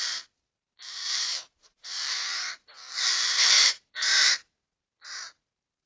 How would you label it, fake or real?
fake